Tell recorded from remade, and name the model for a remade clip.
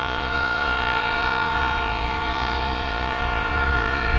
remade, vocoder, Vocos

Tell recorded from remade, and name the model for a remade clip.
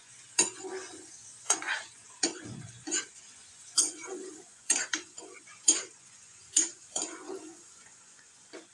remade, vocoder, Vocos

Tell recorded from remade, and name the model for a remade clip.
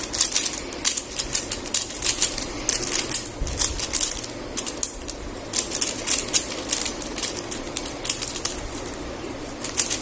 recorded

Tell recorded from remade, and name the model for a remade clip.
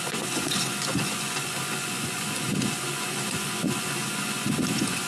remade, vocoder, Vocos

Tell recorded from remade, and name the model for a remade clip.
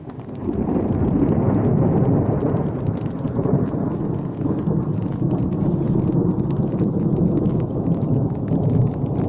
recorded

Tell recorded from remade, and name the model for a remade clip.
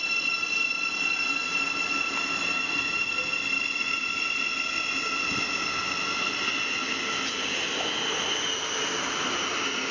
recorded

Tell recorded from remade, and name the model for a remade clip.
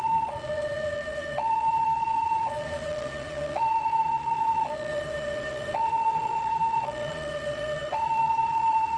remade, vocoder, Vocos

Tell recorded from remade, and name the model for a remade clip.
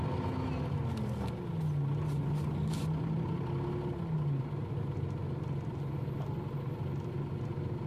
recorded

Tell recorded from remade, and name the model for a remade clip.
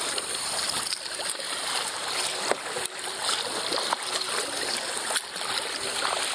recorded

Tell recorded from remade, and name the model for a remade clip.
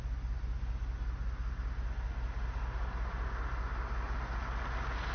recorded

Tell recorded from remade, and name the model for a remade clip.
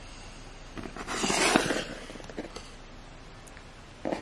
recorded